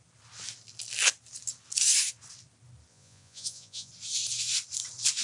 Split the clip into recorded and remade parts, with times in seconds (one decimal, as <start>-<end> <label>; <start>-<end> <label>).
0.0-2.9 recorded; 2.9-3.9 remade; 3.9-5.2 recorded